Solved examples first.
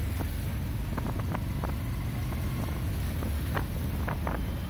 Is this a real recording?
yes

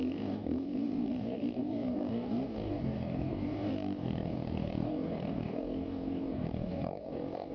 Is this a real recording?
no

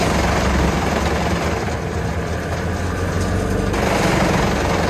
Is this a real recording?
yes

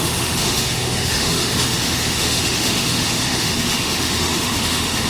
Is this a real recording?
no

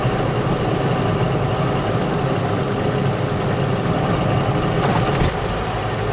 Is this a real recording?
yes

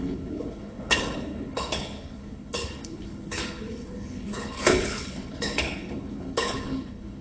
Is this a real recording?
no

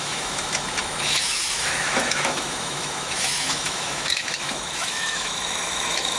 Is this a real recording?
no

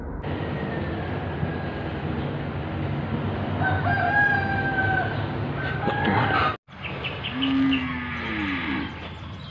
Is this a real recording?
yes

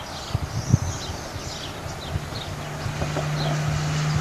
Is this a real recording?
yes